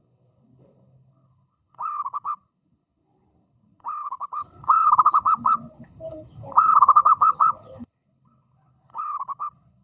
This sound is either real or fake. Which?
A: fake